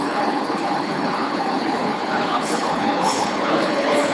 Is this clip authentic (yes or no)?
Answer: no